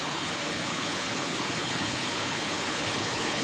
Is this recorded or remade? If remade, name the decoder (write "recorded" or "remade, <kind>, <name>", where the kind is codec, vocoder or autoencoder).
remade, codec, HILCodec